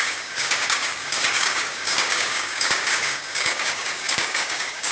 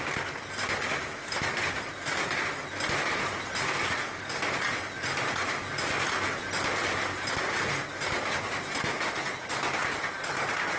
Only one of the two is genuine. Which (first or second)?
second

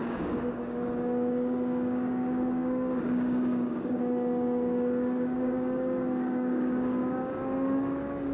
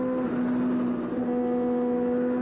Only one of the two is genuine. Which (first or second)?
second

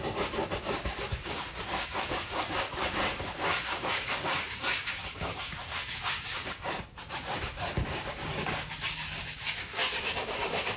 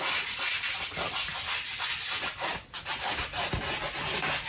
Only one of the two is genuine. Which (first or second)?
second